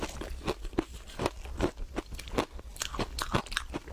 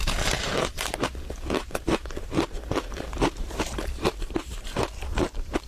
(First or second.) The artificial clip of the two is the second